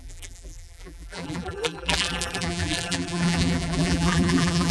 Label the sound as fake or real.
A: fake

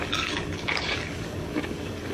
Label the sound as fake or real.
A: fake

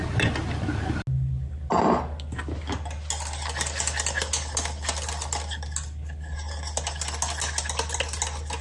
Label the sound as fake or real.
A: real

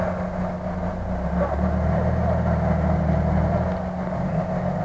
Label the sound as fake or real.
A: real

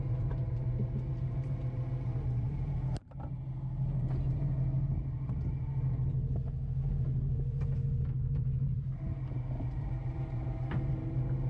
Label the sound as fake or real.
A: fake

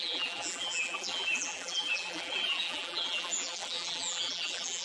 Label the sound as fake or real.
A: fake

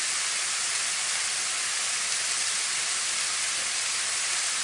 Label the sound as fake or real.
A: real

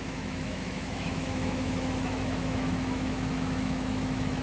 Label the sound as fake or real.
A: fake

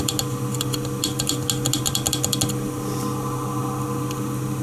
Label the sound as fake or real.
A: real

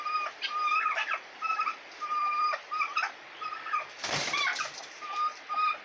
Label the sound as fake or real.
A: fake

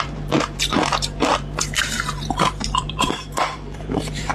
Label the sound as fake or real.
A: fake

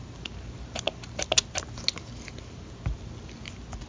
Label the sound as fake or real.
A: real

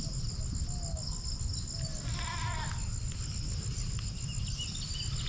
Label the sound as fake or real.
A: real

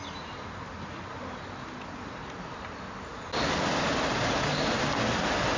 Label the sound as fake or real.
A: real